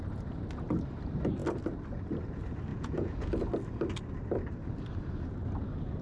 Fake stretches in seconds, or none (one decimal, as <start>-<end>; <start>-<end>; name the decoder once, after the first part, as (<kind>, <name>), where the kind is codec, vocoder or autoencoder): 2.7-3.3 (vocoder, Vocos)